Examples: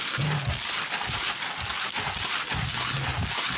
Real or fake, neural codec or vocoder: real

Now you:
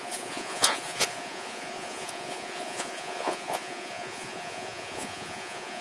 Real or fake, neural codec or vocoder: fake, vocoder, Vocos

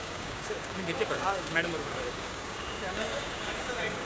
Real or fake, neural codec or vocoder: fake, codec, DAC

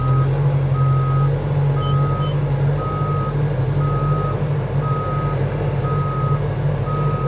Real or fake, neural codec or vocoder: real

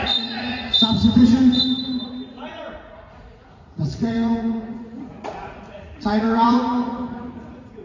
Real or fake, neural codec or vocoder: fake, vocoder, Vocos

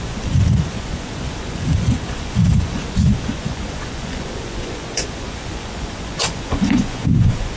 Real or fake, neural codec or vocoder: fake, vocoder, Vocos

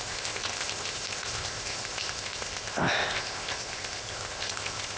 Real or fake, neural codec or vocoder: fake, codec, ZipCodec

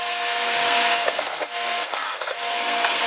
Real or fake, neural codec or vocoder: fake, codec, SNAC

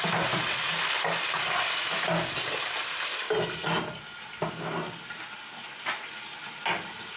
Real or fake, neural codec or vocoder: real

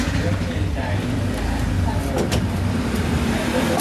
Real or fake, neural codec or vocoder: real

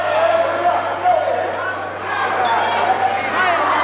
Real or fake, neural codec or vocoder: real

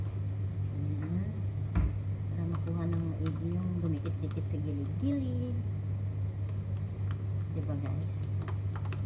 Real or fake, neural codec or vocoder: real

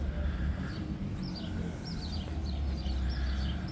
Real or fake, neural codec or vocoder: real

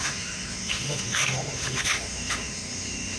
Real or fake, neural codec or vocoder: fake, autoencoder, DAC-VAE